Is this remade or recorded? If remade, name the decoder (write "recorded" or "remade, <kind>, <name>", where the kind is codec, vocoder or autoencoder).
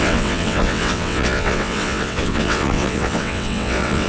remade, vocoder, WaveNeXt